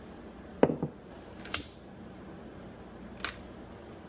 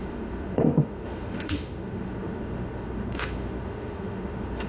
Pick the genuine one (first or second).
first